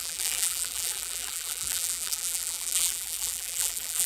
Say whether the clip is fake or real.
fake